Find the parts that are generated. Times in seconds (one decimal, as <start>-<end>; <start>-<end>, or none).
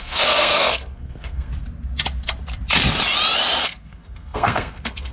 0.0-1.5; 3.6-5.1